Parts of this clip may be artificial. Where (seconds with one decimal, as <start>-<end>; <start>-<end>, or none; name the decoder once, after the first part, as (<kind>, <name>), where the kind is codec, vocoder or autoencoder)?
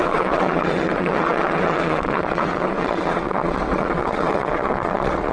0.0-5.3 (vocoder, WaveNeXt)